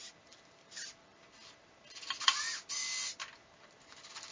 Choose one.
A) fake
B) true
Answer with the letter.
B